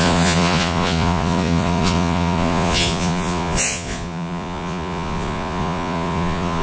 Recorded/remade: remade